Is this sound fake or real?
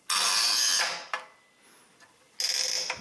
real